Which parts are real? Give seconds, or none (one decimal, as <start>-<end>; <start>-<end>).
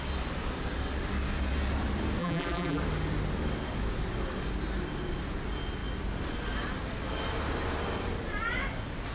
0.0-2.2; 2.8-9.1